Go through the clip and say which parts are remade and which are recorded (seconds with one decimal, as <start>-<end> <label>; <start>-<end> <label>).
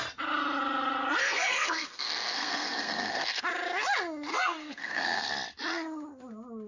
0.0-1.2 recorded; 1.2-3.4 remade; 3.4-4.3 recorded; 4.3-5.3 remade; 5.3-6.7 recorded